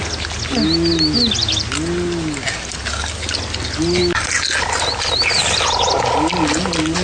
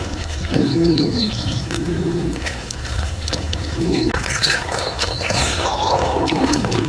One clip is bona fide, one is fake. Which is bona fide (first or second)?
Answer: first